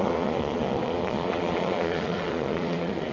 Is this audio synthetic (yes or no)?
yes